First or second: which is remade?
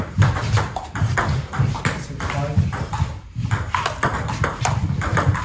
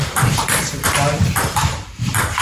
second